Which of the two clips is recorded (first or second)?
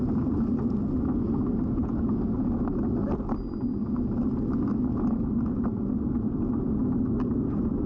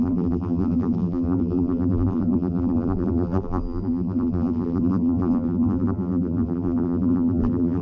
first